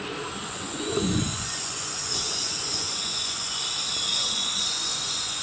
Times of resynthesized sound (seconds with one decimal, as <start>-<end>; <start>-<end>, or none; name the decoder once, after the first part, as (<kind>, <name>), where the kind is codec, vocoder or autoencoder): 0.4-3.6 (vocoder, Vocos); 4.1-5.4